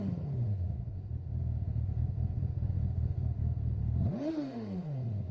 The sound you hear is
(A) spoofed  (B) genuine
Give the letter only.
A